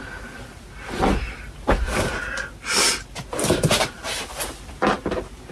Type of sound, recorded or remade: recorded